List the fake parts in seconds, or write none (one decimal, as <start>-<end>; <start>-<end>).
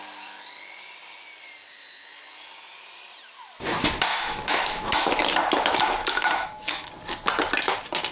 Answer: 4.1-5.1; 6.0-6.9